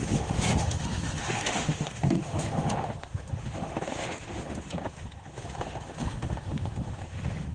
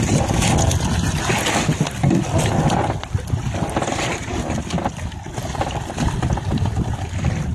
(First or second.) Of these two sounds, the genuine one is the second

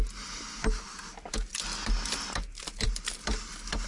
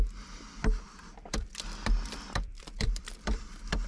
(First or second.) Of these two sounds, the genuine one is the first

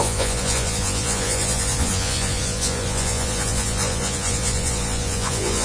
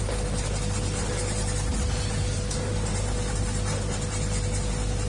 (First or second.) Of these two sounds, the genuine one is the second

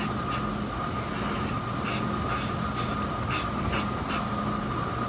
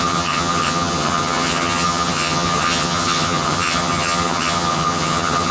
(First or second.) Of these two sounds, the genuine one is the first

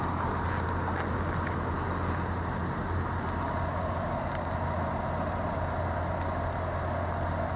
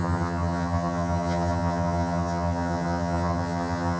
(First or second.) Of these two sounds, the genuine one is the first